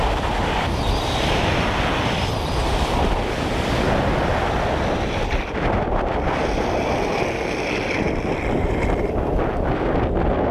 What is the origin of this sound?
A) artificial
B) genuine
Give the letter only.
B